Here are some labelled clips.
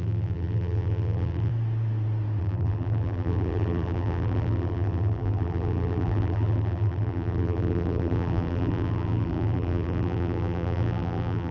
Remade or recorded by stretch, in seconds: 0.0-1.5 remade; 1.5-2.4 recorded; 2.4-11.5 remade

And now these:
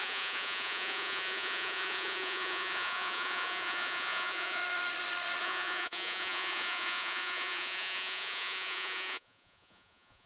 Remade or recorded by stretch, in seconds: 0.0-4.6 remade; 4.6-5.4 recorded; 5.4-10.3 remade

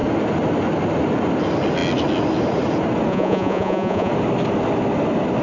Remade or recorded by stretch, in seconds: 0.0-3.1 recorded; 3.1-4.1 remade; 4.1-5.4 recorded

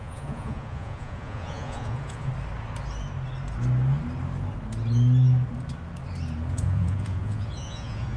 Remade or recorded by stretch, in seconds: 0.0-2.3 remade; 2.3-6.5 recorded; 6.5-8.2 remade

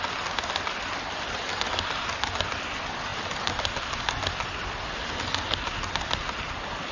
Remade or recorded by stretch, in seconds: 0.0-6.9 recorded